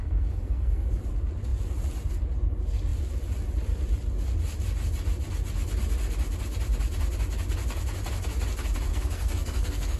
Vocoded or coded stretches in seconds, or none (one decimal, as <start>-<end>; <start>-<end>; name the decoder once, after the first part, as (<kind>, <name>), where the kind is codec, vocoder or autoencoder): 0.0-1.0 (codec, SNAC); 8.9-10.0